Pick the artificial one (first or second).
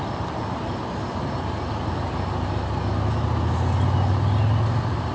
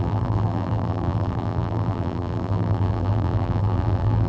second